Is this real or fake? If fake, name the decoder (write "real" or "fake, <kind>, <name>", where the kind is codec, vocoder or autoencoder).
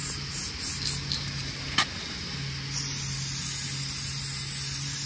real